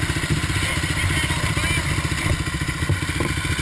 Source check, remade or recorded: recorded